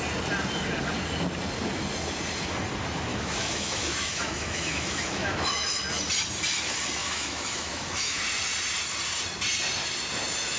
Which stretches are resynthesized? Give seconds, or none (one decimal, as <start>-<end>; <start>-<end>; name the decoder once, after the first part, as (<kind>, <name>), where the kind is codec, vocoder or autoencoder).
3.1-5.8 (autoencoder, DAC-VAE); 7.0-8.2